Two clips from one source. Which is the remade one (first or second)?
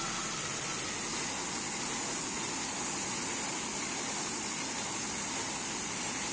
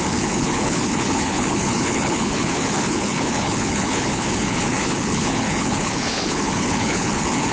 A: second